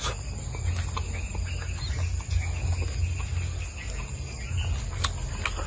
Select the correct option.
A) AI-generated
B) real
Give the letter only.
B